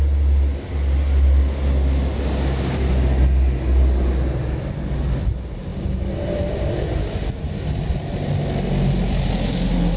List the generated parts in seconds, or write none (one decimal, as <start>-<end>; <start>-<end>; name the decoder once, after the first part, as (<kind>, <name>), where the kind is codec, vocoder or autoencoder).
none